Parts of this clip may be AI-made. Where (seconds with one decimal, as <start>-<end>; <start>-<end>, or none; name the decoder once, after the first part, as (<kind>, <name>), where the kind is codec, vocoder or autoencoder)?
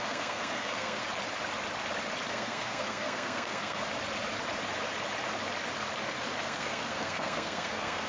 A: 0.0-1.0 (codec, SNAC); 2.3-3.8; 6.4-8.1